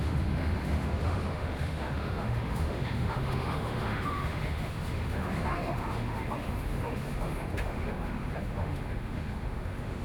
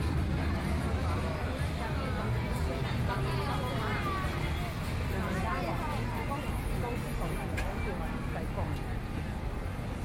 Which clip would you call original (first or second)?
second